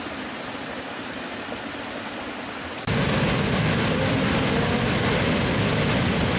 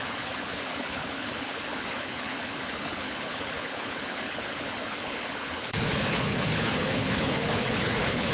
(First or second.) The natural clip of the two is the first